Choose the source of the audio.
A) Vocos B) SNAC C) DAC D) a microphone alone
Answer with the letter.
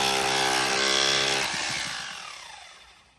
D